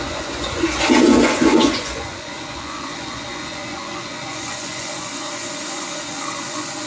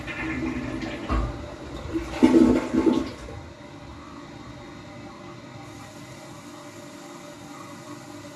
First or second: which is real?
second